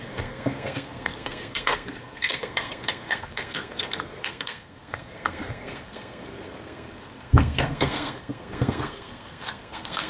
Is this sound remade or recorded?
remade